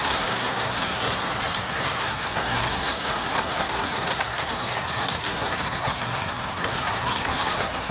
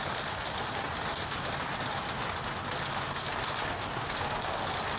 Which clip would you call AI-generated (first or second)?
first